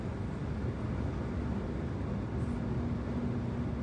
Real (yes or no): yes